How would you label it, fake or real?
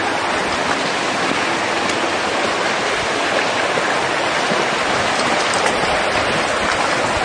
real